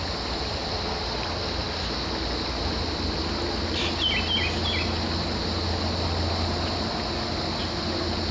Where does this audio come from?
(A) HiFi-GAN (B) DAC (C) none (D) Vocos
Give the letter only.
C